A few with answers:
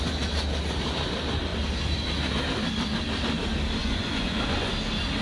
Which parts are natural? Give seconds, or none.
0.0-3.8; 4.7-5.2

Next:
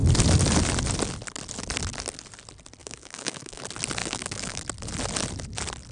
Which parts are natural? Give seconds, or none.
0.0-2.8; 3.6-4.0; 4.6-5.9

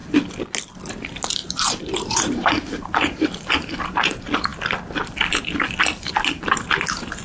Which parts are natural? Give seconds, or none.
0.0-1.4; 3.5-7.2

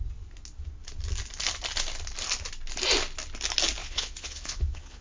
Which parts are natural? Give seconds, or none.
0.0-3.8